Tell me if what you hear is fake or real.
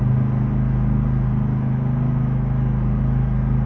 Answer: real